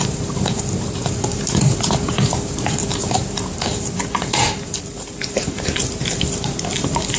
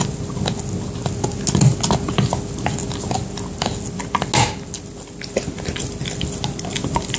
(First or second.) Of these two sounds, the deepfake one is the first